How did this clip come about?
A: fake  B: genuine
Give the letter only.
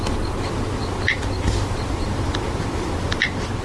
B